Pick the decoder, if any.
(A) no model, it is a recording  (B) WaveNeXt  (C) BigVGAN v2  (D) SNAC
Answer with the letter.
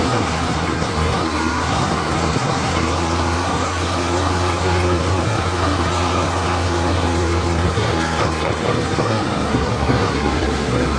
D